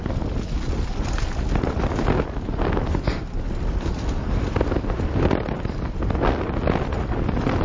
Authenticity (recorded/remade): recorded